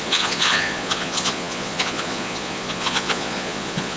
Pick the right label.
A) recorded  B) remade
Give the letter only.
B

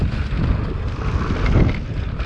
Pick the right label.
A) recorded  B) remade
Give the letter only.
A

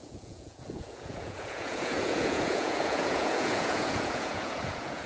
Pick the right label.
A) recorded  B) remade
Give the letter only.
B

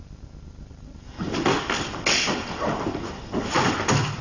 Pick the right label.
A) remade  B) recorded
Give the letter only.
B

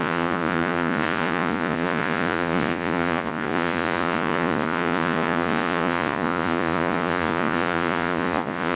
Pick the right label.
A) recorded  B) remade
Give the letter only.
B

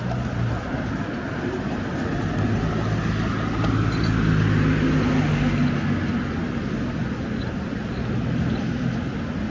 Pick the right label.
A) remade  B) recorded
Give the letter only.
B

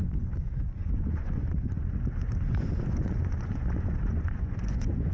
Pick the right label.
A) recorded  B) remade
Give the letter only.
B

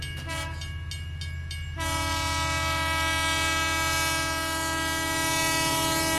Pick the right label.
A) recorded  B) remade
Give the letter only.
A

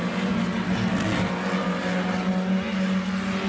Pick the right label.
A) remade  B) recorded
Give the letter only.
B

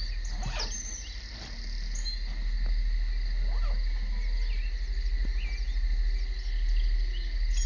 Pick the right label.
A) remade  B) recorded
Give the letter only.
B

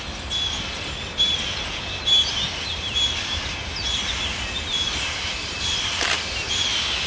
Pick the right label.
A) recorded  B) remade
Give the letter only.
A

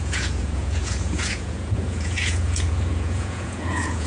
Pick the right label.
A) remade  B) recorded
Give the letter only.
A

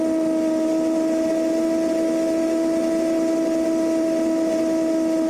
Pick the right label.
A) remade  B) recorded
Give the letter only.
B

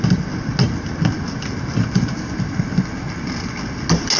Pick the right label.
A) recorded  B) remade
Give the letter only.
A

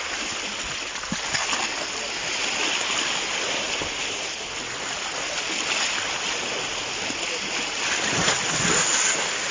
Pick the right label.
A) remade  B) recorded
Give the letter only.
B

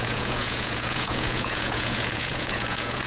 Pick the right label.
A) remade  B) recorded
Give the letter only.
A